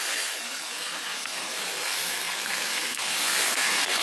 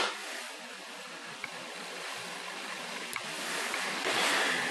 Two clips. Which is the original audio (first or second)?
second